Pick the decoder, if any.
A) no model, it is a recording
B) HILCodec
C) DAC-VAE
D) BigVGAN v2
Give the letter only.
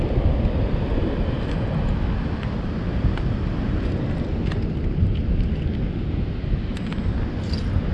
A